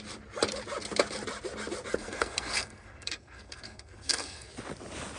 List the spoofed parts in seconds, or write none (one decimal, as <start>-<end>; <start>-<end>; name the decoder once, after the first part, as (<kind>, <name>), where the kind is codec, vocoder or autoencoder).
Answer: 1.9-4.5 (codec, SNAC)